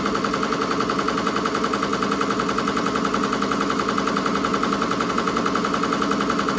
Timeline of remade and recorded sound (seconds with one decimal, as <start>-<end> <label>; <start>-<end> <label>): 0.0-6.6 recorded